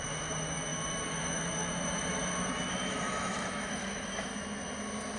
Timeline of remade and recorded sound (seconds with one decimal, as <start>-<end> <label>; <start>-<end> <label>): 0.0-4.3 remade; 4.3-5.2 recorded